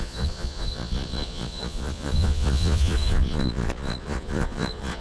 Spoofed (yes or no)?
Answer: yes